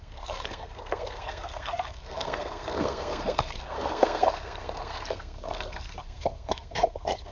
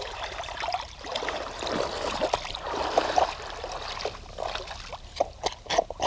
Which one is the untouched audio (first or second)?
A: second